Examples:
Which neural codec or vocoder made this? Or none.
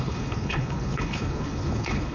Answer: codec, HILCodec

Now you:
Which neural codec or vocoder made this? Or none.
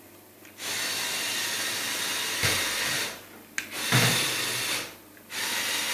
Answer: none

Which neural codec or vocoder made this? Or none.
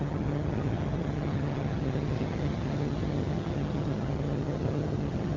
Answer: vocoder, HiFi-GAN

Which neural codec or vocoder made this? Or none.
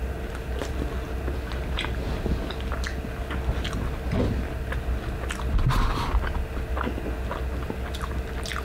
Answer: none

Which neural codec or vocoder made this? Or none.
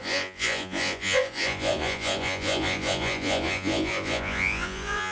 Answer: vocoder, Vocos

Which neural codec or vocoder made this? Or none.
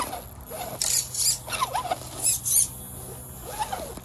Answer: none